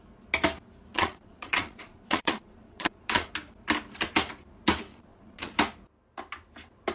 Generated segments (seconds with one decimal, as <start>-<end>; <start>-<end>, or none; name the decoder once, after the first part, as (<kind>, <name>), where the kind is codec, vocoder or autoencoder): 0.9-3.3 (vocoder, Vocos); 4.9-5.5